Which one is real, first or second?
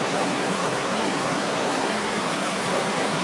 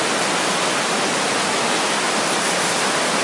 second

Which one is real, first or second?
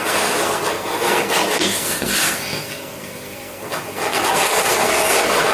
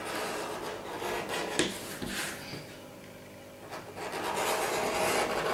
second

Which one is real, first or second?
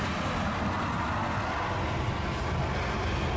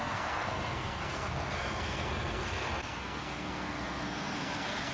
first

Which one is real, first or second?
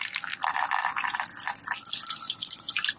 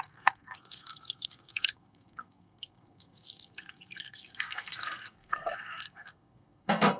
first